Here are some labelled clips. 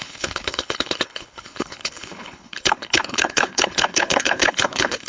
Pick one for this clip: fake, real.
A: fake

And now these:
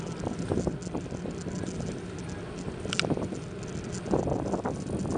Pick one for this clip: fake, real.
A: real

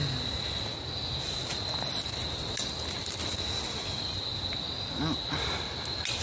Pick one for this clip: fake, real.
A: real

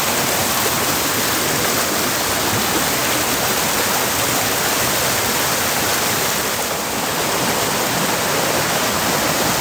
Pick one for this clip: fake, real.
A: real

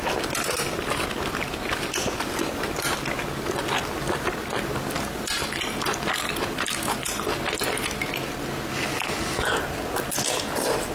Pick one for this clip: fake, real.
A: real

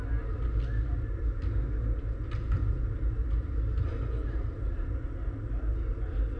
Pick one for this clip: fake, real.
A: real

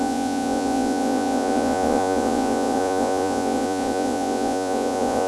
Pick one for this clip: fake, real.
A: fake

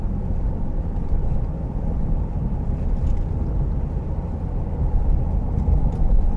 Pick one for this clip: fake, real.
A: real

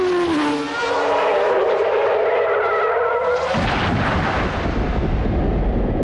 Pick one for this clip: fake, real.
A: real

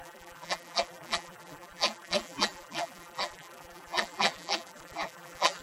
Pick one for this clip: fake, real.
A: fake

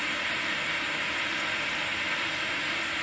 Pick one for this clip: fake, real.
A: real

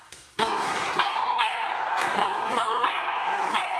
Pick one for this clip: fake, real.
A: fake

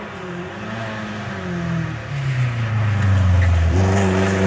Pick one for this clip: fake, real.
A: real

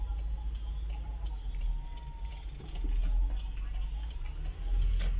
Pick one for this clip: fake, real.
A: real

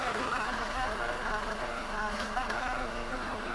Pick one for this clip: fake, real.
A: fake